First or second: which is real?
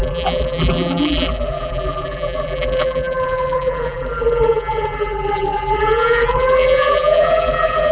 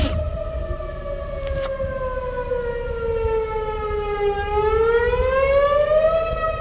second